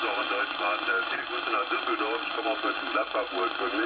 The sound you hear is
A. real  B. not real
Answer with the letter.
A